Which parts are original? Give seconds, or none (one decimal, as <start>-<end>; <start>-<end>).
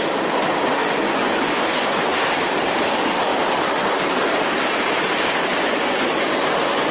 0.0-0.8; 2.0-5.5